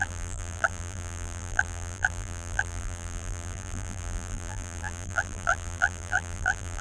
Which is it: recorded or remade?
remade